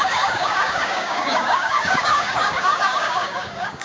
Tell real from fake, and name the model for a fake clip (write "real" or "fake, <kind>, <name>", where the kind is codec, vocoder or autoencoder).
fake, codec, DAC